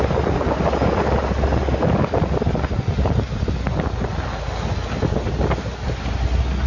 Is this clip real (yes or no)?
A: yes